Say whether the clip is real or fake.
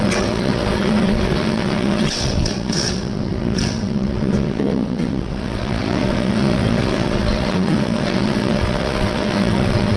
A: fake